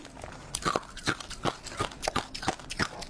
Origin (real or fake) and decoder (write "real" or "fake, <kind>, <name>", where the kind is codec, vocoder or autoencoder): real